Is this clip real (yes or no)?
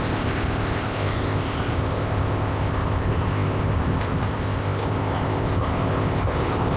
no